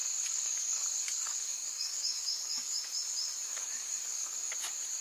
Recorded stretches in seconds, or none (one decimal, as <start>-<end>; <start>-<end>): 2.8-3.5; 4.5-5.0